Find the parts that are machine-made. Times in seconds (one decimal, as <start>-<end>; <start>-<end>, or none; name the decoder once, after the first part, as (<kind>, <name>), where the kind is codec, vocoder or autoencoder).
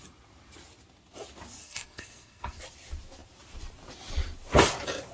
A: 1.6-2.6 (codec, SNAC)